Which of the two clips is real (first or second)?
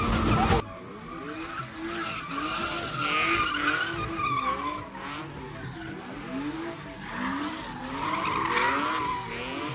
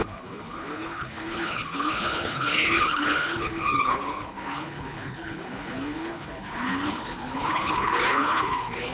first